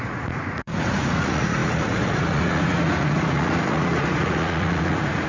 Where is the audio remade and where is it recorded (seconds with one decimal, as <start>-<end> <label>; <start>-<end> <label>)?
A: 0.0-5.3 remade